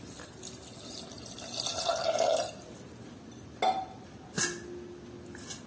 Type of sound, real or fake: real